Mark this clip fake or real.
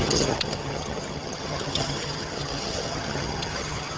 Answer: fake